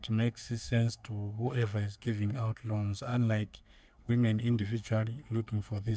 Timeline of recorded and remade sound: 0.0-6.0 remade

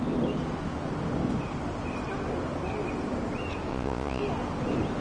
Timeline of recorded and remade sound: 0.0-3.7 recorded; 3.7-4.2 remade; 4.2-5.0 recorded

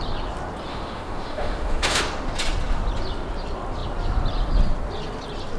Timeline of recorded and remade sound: 0.0-0.7 recorded; 0.7-2.0 remade; 2.0-5.6 recorded

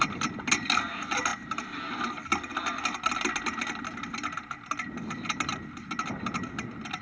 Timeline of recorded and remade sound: 0.0-7.0 recorded